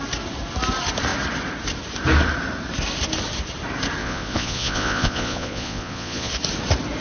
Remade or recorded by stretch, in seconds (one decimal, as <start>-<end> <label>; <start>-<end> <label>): 0.0-4.0 recorded; 4.0-6.3 remade; 6.3-7.0 recorded

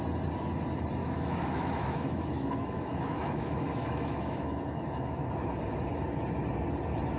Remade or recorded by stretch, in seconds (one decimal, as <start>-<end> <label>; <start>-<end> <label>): 0.0-1.0 recorded; 1.0-5.3 remade; 5.3-7.2 recorded

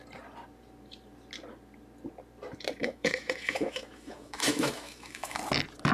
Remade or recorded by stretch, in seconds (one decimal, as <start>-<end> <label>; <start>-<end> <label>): 0.0-2.8 recorded; 2.8-5.4 remade; 5.4-5.9 recorded